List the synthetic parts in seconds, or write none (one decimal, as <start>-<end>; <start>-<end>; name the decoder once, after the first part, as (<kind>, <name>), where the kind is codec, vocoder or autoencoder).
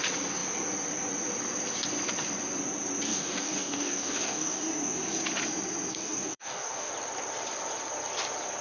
3.1-5.0 (codec, DAC); 5.9-6.9